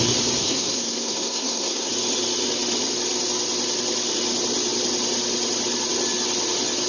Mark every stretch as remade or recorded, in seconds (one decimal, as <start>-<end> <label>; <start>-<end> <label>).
0.0-0.4 recorded; 0.4-1.9 remade; 1.9-6.9 recorded

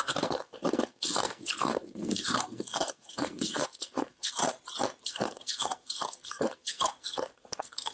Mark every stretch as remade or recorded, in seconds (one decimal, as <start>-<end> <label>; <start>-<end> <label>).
0.0-4.4 remade; 4.4-5.0 recorded; 5.0-7.9 remade

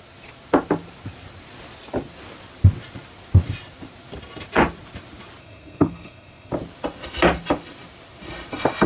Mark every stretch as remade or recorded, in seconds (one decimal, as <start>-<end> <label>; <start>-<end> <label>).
0.0-5.4 recorded; 5.4-6.5 remade; 6.5-8.9 recorded

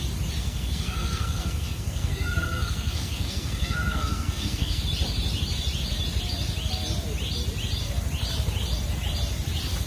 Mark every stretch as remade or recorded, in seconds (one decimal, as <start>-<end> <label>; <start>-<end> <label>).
0.0-0.4 recorded; 0.4-4.8 remade; 4.8-9.9 recorded

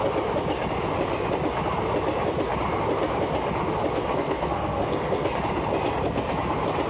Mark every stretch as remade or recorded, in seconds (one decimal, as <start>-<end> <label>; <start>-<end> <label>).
0.0-4.1 recorded; 4.1-5.3 remade; 5.3-6.9 recorded

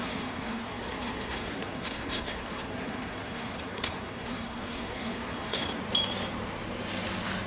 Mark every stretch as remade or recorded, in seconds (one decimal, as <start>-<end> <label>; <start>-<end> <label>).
0.0-5.8 remade; 5.8-7.5 recorded

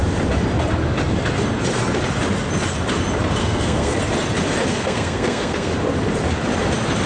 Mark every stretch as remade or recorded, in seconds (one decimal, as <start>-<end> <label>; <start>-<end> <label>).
0.0-3.4 recorded; 3.4-4.0 remade; 4.0-4.7 recorded; 4.7-5.7 remade; 5.7-7.1 recorded

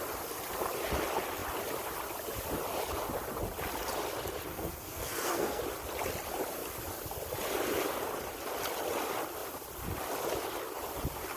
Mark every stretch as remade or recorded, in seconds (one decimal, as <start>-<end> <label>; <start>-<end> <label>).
0.0-4.5 recorded; 4.5-5.6 remade; 5.6-11.4 recorded